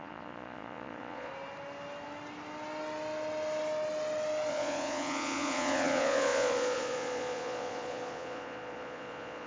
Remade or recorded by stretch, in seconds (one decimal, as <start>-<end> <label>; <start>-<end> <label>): 0.0-1.3 remade; 1.3-4.5 recorded; 4.5-9.5 remade